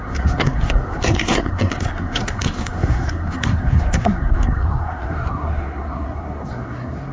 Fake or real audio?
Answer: fake